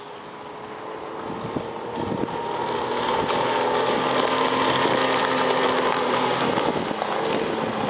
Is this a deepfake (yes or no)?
no